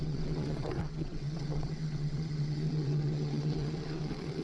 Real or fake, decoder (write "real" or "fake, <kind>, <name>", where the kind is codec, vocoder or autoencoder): fake, vocoder, WaveNeXt